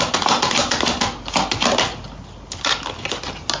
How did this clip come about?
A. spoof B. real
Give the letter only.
B